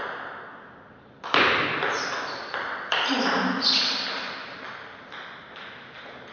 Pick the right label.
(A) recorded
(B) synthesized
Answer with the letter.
A